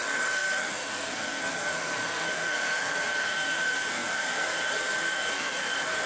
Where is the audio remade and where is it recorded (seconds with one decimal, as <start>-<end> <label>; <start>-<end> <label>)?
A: 0.0-6.1 remade